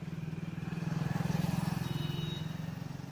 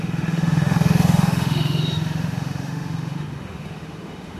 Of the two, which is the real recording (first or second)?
first